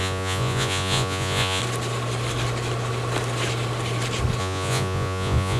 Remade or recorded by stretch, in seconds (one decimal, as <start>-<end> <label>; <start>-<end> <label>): 0.0-1.6 remade; 1.6-4.4 recorded; 4.4-5.6 remade